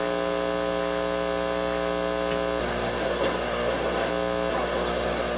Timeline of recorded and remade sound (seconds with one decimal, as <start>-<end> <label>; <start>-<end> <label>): 0.0-2.6 recorded; 2.6-4.1 remade; 4.1-4.5 recorded; 4.5-5.4 remade

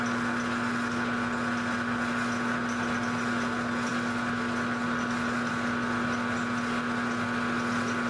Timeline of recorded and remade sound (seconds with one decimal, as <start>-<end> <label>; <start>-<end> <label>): 0.0-8.1 recorded

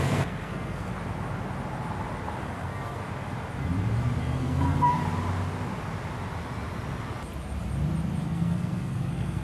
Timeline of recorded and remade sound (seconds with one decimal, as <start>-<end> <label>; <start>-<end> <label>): 0.0-0.9 remade; 0.9-2.4 recorded; 2.4-3.0 remade; 3.0-4.2 recorded; 4.2-5.0 remade; 5.0-8.2 recorded; 8.2-9.4 remade

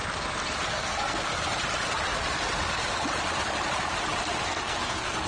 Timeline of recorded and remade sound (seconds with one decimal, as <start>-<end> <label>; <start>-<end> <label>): 0.0-0.7 recorded; 0.7-1.3 remade; 1.3-4.5 recorded; 4.5-5.3 remade

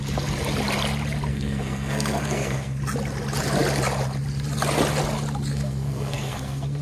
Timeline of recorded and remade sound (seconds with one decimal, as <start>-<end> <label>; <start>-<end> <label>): 0.0-1.3 recorded; 1.3-2.8 remade; 2.8-5.5 recorded; 5.5-6.8 remade

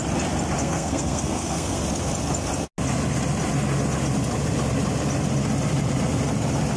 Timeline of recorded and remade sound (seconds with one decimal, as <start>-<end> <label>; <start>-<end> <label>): 0.0-0.6 recorded; 0.6-1.8 remade; 1.8-6.8 recorded